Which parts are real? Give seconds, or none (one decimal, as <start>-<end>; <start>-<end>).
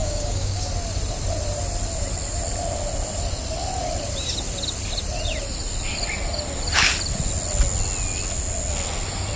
0.7-9.4